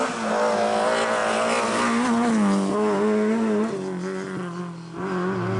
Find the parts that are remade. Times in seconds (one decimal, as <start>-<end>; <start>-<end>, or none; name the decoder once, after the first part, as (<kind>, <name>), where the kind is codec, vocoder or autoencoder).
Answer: none